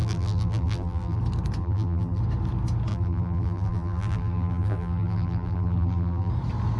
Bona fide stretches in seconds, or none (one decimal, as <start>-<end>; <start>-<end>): 1.2-1.6; 2.2-2.9; 6.3-6.8